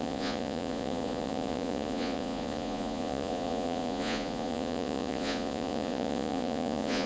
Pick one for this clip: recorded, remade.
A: remade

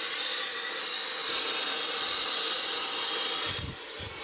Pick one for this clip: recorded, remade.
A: recorded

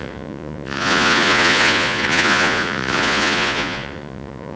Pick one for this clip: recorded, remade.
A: remade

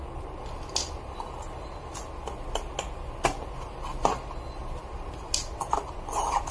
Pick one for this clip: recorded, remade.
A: recorded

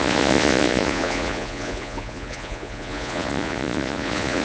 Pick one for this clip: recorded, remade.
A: remade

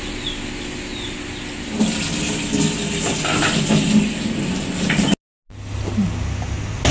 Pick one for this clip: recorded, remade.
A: recorded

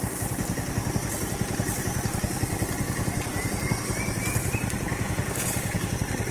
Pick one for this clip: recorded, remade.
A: recorded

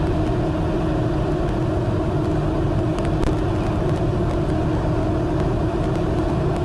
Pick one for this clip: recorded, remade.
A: recorded